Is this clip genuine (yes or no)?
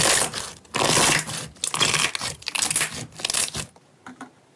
yes